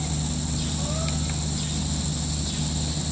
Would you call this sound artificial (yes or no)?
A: no